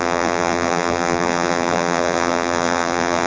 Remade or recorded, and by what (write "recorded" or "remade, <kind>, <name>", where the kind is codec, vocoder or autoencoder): remade, vocoder, BigVGAN v2